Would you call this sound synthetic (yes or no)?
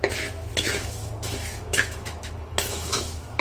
yes